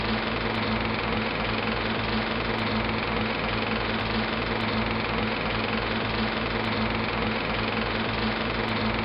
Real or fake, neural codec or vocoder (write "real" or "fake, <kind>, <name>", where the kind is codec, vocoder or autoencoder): real